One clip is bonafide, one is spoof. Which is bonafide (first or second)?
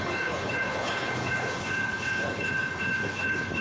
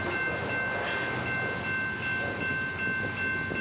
second